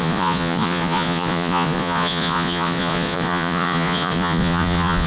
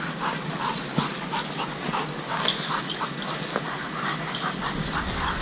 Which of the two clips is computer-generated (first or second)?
first